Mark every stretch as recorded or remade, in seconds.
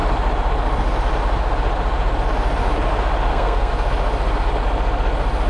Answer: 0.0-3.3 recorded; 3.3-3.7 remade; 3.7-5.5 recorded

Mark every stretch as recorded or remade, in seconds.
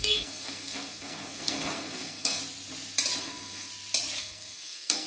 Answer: 0.0-2.4 remade; 2.4-3.2 recorded; 3.2-3.7 remade; 3.7-4.2 recorded; 4.2-5.1 remade